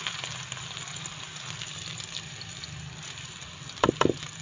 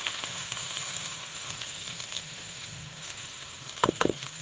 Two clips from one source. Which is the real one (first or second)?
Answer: first